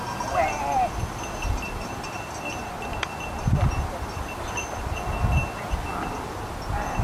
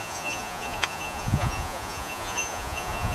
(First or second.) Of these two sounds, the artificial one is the second